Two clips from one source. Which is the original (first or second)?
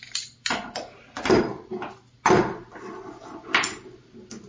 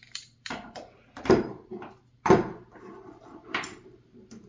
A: first